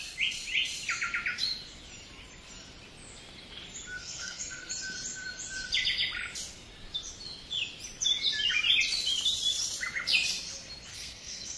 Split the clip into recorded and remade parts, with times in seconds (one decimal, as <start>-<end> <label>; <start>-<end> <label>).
0.0-4.0 recorded; 4.0-4.7 remade; 4.7-10.9 recorded; 10.9-11.6 remade